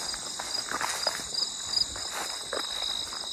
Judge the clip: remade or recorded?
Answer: recorded